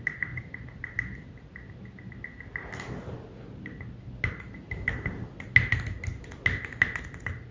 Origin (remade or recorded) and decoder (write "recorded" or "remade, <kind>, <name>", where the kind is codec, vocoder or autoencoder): recorded